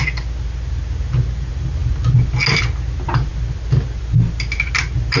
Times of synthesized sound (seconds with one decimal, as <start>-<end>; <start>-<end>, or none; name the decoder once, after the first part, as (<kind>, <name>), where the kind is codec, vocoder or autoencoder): none